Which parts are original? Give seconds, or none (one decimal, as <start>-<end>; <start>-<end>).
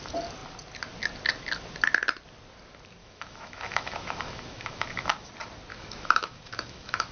0.0-3.0; 5.3-5.7